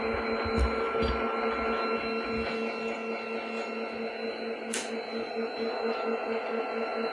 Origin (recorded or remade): recorded